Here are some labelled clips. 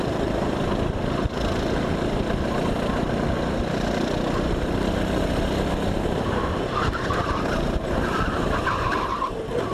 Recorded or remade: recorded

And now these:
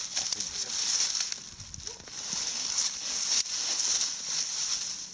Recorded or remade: recorded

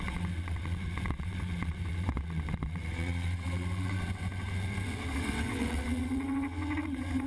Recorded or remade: remade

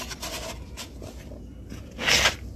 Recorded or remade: recorded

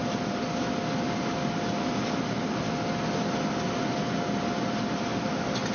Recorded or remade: recorded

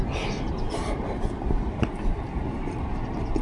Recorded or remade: remade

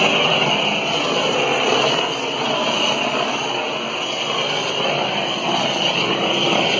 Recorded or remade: recorded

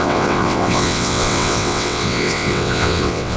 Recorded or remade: remade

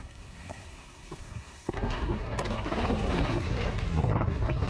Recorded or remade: remade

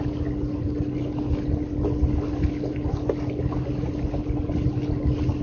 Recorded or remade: recorded